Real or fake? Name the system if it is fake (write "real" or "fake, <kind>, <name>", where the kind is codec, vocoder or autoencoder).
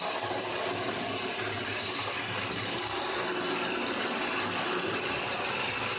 real